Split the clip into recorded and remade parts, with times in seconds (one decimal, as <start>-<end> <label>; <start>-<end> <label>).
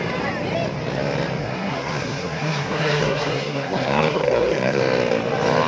0.0-1.4 recorded; 1.4-4.8 remade; 4.8-5.7 recorded